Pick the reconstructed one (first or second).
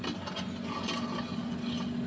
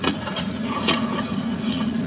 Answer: second